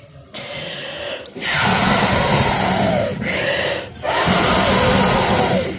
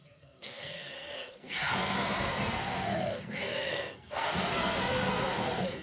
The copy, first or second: second